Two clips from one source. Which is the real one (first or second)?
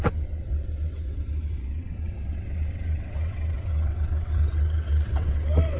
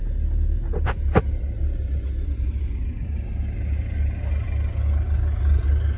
second